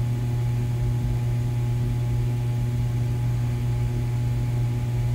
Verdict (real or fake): real